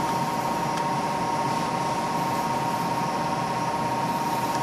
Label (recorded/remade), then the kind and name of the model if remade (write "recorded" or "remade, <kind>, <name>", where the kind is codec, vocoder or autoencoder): remade, vocoder, BigVGAN v2